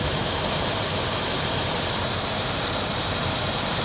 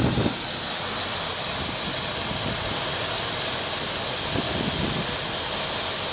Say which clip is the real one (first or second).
second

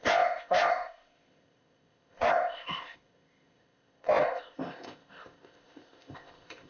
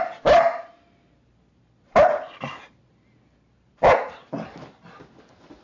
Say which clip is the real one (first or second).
second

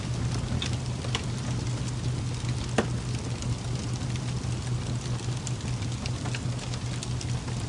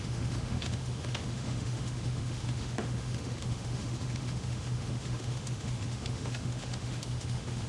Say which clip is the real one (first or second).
first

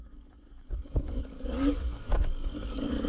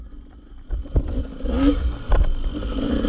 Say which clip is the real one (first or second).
second